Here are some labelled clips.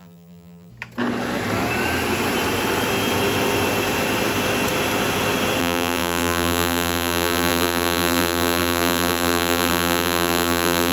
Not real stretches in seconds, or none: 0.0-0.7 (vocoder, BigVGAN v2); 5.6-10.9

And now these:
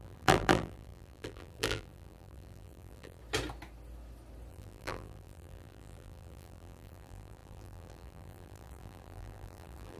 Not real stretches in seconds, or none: 0.0-3.2 (vocoder, BigVGAN v2); 4.5-10.0

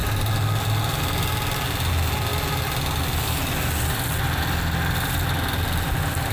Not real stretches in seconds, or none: none

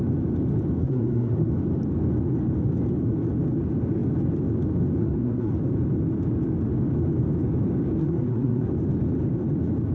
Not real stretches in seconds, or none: 0.8-1.5 (codec, SNAC); 5.0-5.5; 8.0-8.7

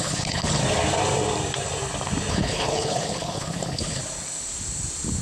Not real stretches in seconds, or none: 0.0-0.6 (codec, HILCodec); 2.3-4.0

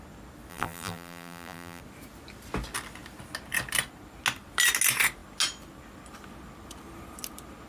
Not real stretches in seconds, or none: 0.5-1.8 (vocoder, BigVGAN v2)